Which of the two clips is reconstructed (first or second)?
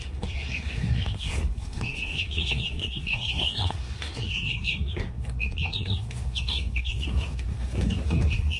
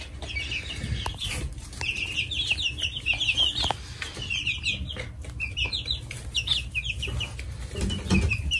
first